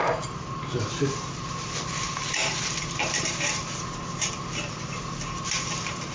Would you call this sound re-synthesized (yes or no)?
yes